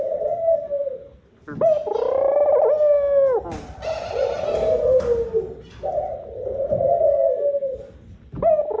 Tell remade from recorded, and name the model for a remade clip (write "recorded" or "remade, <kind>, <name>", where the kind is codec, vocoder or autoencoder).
recorded